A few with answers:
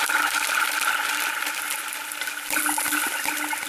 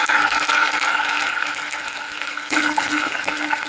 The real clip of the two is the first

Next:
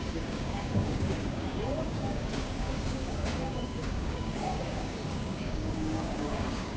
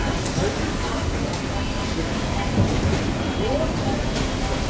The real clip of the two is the second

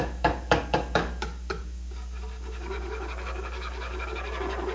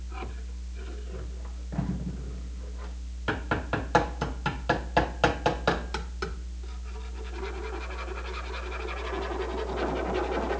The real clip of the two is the second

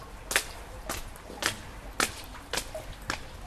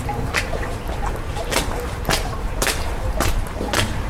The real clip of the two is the first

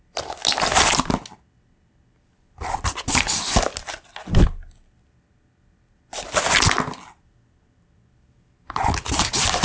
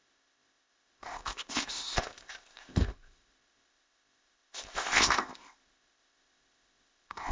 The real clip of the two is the first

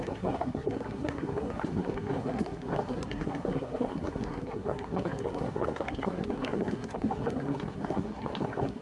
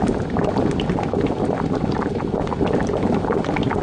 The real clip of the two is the second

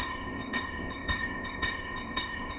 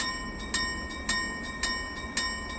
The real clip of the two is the second